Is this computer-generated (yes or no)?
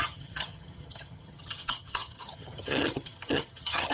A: yes